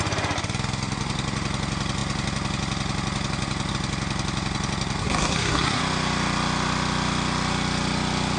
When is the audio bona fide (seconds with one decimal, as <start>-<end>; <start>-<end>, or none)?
0.0-5.0; 5.8-8.4

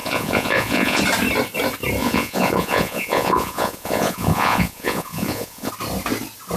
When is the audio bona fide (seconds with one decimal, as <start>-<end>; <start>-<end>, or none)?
1.0-2.0; 5.7-6.6

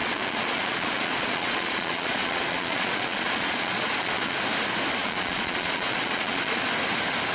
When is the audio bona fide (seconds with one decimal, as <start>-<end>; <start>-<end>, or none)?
4.4-5.0; 6.7-7.3

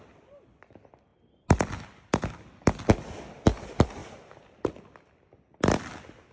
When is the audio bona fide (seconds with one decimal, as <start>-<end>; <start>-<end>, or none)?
0.0-6.3

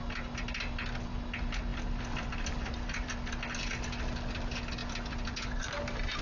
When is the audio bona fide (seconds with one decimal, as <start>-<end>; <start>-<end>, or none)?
0.0-1.7; 3.1-4.8; 5.6-6.2

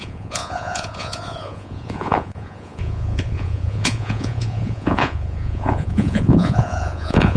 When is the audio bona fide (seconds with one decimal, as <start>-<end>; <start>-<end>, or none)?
none

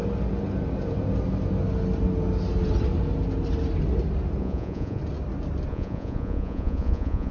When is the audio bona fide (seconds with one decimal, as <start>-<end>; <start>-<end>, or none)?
0.0-4.4; 5.0-5.7